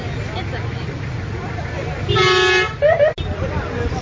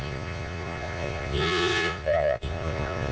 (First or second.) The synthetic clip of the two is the second